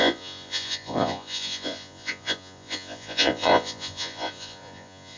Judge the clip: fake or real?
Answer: fake